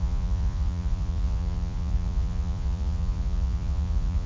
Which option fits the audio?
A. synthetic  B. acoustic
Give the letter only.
A